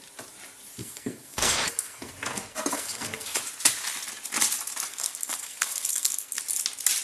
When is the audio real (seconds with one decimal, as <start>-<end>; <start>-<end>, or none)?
0.0-0.8; 2.1-2.5; 3.4-4.9; 6.4-7.0